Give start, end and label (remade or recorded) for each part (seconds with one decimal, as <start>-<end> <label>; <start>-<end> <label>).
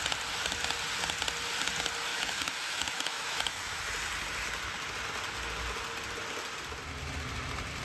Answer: 0.0-2.1 recorded; 2.1-3.8 remade; 3.8-7.8 recorded